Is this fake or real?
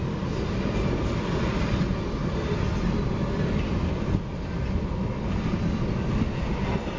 real